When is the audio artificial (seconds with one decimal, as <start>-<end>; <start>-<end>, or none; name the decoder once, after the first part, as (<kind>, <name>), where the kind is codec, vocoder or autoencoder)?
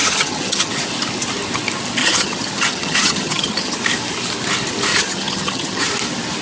0.0-0.7 (vocoder, HiFi-GAN); 2.0-3.8; 4.9-5.8